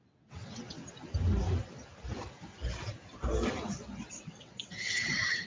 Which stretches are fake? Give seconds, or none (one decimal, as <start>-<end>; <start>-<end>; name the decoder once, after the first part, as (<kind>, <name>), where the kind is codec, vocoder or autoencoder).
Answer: 0.0-0.8 (vocoder, WaveNeXt); 4.1-5.5